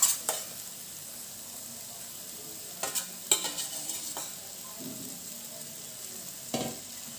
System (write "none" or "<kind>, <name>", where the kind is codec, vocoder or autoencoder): none